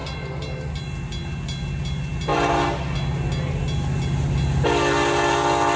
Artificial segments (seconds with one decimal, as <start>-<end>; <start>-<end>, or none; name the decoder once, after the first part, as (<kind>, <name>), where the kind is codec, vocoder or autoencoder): none